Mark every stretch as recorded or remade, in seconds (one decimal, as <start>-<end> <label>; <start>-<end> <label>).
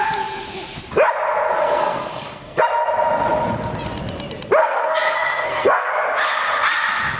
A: 0.0-1.6 recorded; 1.6-2.6 remade; 2.6-4.6 recorded; 4.6-5.9 remade; 5.9-7.2 recorded